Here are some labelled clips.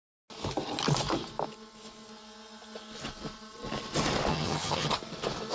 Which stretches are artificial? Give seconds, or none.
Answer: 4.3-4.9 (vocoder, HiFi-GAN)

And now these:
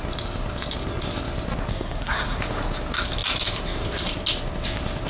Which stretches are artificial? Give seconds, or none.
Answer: 1.7-2.4 (codec, SNAC)

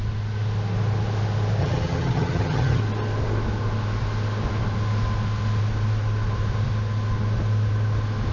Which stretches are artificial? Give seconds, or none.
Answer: 1.6-2.8 (vocoder, HiFi-GAN)

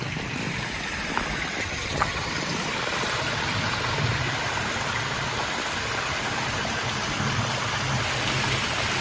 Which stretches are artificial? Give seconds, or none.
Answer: 1.6-2.3 (vocoder, HiFi-GAN)

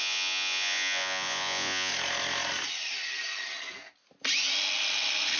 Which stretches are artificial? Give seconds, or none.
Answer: 0.0-1.9 (vocoder, Vocos)

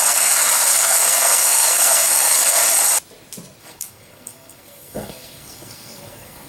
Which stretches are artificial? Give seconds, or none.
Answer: 0.0-2.6 (codec, SNAC); 3.6-6.5

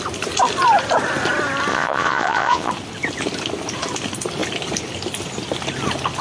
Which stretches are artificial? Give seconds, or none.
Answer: 1.7-2.7 (vocoder, Vocos)